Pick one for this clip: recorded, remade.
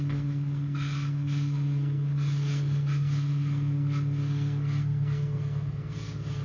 remade